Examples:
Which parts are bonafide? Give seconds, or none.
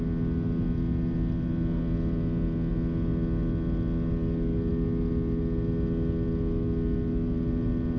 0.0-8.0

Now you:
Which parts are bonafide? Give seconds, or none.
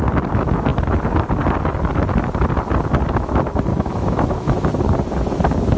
0.0-3.7; 4.7-5.8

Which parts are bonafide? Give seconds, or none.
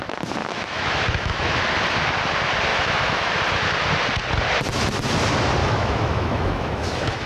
0.0-0.4; 1.6-2.7; 3.3-5.6